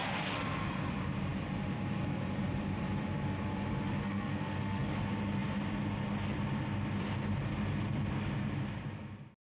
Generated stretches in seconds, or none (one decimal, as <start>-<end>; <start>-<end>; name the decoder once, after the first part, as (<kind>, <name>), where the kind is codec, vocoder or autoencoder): 0.0-0.7 (codec, SNAC); 4.0-4.9

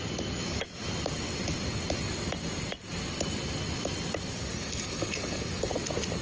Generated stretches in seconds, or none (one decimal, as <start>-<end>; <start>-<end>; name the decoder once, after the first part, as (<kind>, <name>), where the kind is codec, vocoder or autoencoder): 4.5-5.7 (codec, DAC)

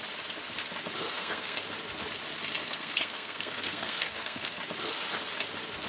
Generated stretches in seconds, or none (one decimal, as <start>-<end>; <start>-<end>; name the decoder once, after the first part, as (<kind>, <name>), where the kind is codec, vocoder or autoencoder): 1.0-1.6 (codec, SNAC); 2.6-4.6

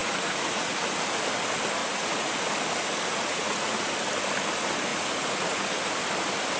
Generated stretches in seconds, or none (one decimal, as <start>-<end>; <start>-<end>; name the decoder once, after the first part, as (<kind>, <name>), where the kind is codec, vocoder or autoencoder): 0.0-0.8 (vocoder, Vocos); 1.8-2.3; 3.1-3.9; 4.9-5.9

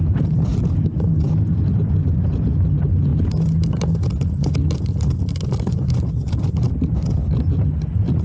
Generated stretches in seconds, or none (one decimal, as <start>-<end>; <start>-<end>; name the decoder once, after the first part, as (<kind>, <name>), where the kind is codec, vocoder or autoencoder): none

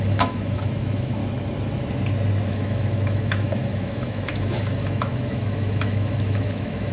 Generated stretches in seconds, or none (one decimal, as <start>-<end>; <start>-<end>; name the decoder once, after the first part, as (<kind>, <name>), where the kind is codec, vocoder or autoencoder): 0.0-1.2 (autoencoder, DAC-VAE); 2.5-6.9

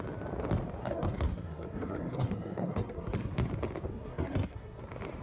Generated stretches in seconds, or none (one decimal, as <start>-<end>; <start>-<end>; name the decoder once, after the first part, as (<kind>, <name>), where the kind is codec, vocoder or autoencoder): 0.8-3.3 (codec, SNAC); 3.9-4.8

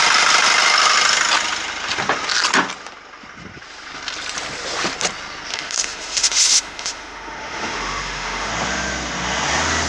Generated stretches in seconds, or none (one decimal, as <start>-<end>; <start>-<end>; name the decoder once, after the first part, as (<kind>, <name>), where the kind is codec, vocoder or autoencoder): 5.5-8.5 (autoencoder, DAC-VAE)